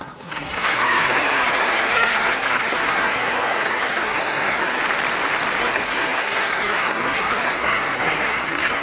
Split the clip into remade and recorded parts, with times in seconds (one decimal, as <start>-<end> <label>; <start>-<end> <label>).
0.0-4.8 remade; 4.8-5.6 recorded; 5.6-8.8 remade